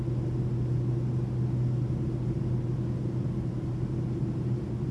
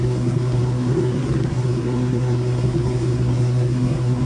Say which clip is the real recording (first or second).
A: first